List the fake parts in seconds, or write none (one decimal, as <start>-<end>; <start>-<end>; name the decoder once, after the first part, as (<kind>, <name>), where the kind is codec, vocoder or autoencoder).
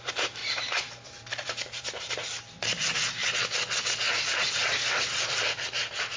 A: 0.0-3.2 (vocoder, BigVGAN v2); 4.1-6.2